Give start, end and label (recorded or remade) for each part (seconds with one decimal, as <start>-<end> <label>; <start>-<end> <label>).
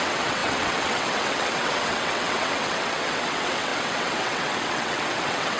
0.0-5.6 remade